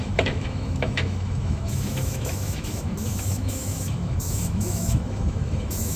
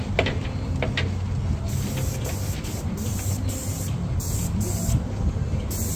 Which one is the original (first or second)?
second